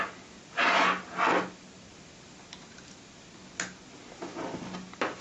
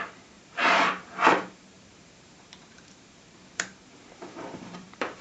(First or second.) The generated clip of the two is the second